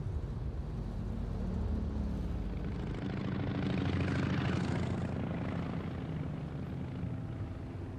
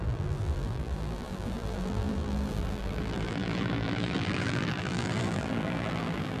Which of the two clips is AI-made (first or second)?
second